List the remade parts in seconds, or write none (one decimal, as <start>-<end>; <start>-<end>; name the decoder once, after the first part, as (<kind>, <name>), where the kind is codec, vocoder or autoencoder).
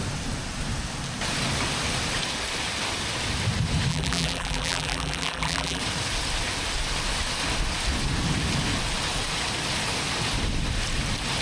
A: 3.9-5.8 (vocoder, BigVGAN v2)